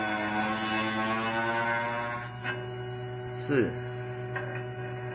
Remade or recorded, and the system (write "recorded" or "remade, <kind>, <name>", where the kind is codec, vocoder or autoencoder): recorded